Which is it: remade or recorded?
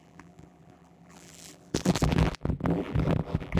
remade